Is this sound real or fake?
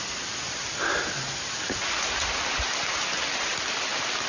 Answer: real